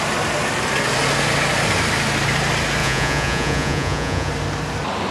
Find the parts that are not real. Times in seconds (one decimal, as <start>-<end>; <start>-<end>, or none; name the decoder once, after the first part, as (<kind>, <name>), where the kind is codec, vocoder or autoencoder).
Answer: 2.8-4.3 (vocoder, Vocos)